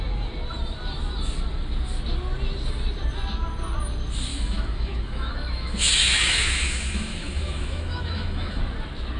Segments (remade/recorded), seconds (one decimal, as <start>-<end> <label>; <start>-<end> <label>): 0.0-4.3 recorded; 4.3-8.6 remade; 8.6-9.2 recorded

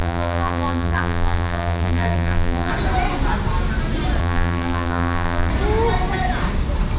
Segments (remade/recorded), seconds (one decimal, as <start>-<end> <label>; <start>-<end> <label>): 0.0-2.7 remade; 2.7-4.2 recorded; 4.2-5.5 remade; 5.5-7.0 recorded

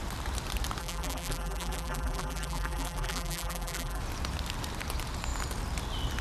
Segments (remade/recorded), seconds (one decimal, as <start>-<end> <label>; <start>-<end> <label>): 0.0-0.8 recorded; 0.8-4.0 remade; 4.0-6.2 recorded